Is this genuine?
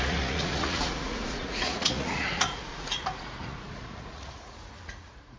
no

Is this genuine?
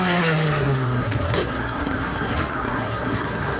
no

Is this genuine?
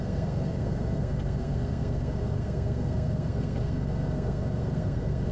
no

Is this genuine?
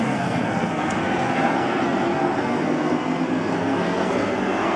no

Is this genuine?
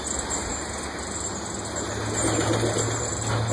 yes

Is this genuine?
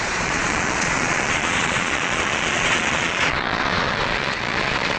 no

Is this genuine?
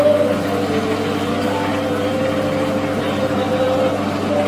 yes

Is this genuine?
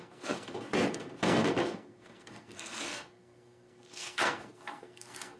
no